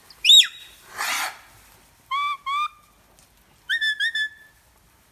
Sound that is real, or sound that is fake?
real